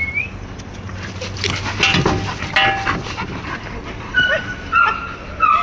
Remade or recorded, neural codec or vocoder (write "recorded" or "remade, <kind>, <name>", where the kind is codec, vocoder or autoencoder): recorded